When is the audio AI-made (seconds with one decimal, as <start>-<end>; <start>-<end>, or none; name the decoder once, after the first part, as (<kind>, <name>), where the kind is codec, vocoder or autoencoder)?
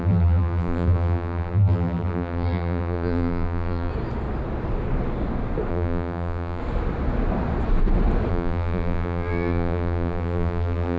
0.0-3.9 (vocoder, BigVGAN v2); 5.7-6.6; 8.3-11.0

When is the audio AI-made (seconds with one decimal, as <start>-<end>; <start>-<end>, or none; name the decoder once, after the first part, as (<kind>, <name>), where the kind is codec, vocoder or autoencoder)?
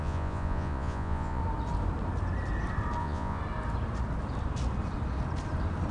0.0-1.4 (vocoder, Vocos); 3.0-3.4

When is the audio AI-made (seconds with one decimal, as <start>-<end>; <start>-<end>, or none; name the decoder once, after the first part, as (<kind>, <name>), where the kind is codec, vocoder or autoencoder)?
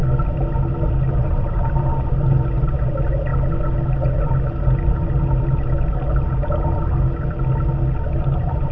1.1-3.3 (vocoder, BigVGAN v2); 8.2-8.7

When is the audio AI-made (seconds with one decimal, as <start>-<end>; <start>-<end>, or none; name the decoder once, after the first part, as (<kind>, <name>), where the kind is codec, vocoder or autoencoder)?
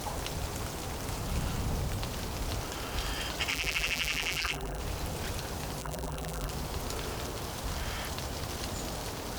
3.5-4.8 (vocoder, BigVGAN v2); 5.8-6.5